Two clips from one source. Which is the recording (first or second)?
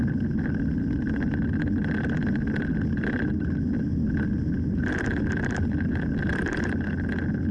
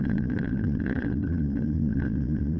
first